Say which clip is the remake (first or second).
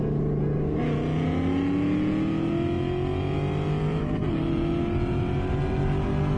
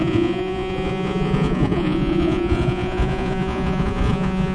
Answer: second